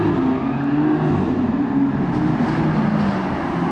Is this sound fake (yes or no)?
no